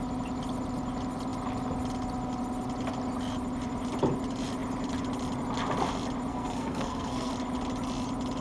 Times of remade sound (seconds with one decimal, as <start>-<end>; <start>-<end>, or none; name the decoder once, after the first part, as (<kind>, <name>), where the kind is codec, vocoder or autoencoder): 6.3-7.3 (codec, SNAC)